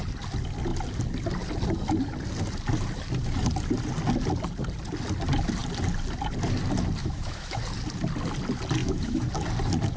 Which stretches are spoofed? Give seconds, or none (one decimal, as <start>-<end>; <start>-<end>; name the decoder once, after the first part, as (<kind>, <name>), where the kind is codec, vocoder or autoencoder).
7.0-7.6 (autoencoder, DAC-VAE); 8.8-9.3